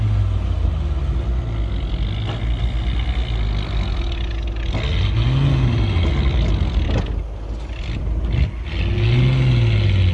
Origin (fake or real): real